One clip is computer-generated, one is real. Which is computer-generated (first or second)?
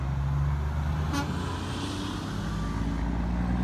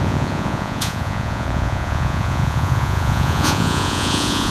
second